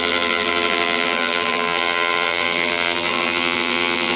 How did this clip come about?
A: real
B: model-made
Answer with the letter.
B